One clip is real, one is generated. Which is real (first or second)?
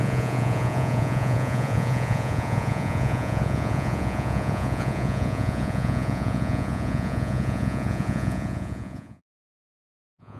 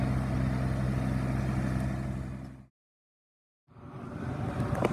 second